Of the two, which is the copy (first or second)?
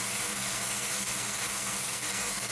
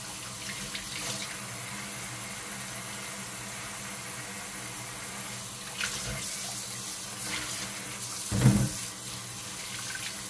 first